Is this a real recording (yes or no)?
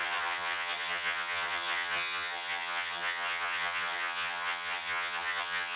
no